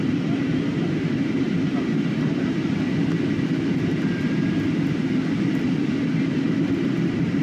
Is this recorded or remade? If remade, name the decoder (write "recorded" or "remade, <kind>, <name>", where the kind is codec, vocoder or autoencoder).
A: recorded